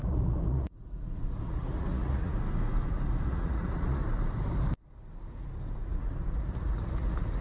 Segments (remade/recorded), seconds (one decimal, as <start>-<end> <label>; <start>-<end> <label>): 0.0-2.3 remade; 2.3-3.3 recorded; 3.3-4.0 remade; 4.0-5.9 recorded; 5.9-7.4 remade